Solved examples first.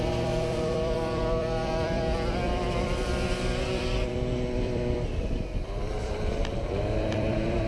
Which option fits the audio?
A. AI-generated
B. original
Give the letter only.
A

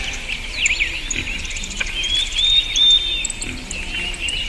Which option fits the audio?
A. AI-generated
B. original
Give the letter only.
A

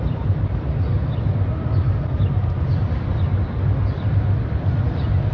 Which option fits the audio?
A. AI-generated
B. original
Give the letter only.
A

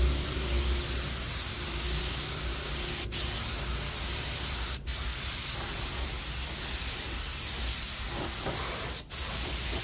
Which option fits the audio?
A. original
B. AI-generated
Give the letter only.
A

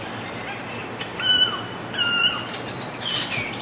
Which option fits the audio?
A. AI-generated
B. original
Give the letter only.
B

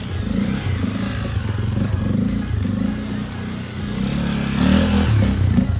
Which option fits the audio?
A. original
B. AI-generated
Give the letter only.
A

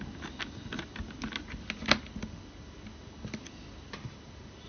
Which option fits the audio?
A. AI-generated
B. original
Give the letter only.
B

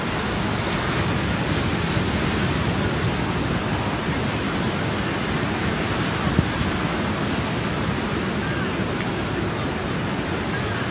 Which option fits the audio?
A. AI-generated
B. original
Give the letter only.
B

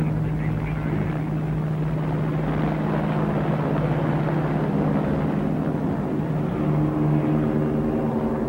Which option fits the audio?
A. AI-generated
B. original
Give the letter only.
B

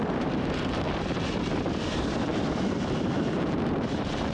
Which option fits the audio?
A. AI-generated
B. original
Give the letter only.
A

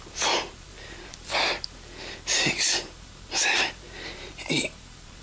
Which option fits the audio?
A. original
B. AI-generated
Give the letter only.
B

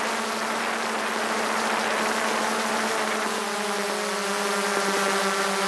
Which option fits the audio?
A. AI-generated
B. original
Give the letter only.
B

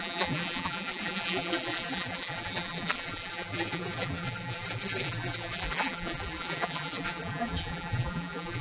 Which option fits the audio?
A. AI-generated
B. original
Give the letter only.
A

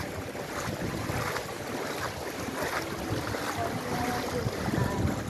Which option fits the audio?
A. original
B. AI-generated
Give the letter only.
A